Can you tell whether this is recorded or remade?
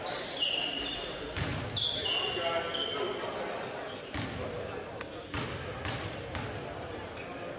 recorded